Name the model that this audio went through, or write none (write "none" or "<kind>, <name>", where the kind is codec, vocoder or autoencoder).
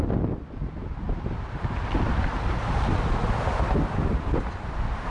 none